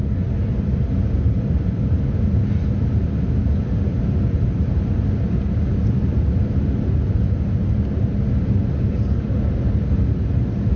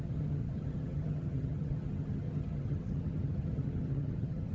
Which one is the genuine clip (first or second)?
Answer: first